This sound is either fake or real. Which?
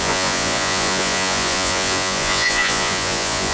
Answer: fake